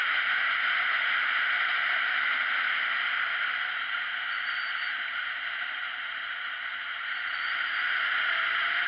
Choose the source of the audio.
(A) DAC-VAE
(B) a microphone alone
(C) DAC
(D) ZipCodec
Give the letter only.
B